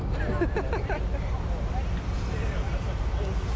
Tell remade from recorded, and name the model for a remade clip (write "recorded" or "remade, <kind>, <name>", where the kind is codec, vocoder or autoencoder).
recorded